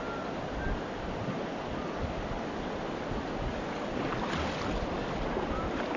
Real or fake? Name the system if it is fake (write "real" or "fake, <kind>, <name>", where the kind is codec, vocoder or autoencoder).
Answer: real